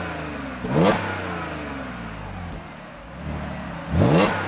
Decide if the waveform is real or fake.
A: real